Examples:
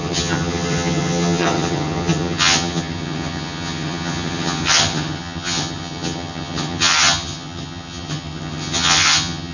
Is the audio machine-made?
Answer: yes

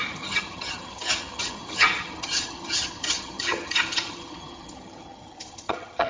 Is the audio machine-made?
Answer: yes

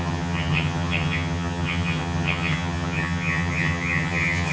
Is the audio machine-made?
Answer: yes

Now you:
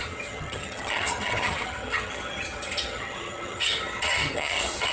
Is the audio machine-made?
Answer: yes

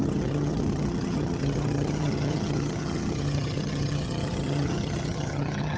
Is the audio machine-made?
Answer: yes